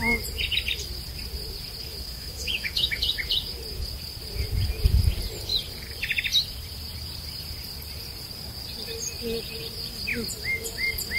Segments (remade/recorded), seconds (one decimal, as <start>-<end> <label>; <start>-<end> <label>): 0.0-1.9 recorded; 1.9-3.0 remade; 3.0-11.2 recorded